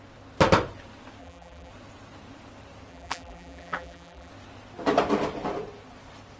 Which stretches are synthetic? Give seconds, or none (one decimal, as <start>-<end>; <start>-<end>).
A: 1.2-1.7; 2.9-4.3